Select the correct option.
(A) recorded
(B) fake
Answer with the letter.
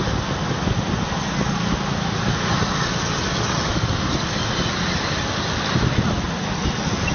A